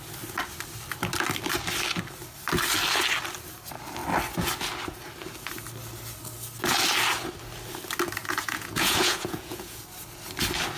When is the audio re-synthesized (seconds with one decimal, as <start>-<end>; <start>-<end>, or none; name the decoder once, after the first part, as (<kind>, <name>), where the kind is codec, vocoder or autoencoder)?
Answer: 8.2-9.8 (vocoder, Vocos)